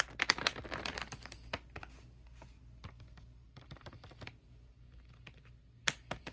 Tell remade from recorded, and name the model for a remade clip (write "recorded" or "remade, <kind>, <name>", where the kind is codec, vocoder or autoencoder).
recorded